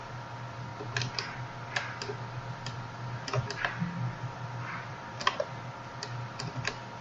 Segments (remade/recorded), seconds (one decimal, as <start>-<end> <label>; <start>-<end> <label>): 0.0-7.0 recorded